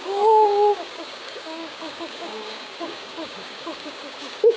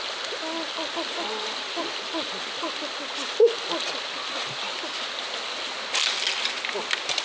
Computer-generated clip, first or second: first